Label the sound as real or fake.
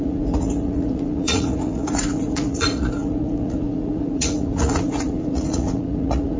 fake